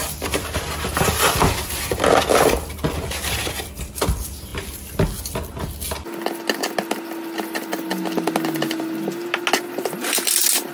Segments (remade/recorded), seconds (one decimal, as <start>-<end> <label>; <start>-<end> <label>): 0.0-10.7 recorded